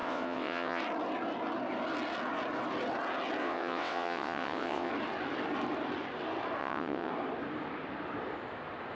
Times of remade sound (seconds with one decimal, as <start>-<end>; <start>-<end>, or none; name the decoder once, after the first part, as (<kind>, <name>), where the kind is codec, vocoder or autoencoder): 0.0-0.8 (vocoder, WaveNeXt); 3.4-4.9; 6.6-7.1